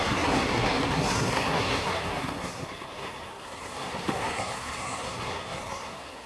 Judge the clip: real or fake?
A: fake